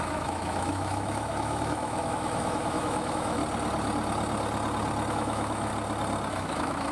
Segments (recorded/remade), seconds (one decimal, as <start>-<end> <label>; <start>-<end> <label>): 0.0-3.4 remade; 3.4-5.1 recorded; 5.1-5.7 remade; 5.7-6.3 recorded; 6.3-6.9 remade